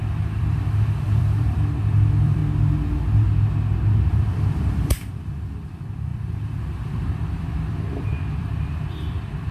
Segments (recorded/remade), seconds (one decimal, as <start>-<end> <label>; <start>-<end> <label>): 0.0-2.4 remade; 2.4-4.1 recorded; 4.1-9.5 remade